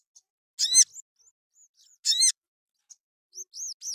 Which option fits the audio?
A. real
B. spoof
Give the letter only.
A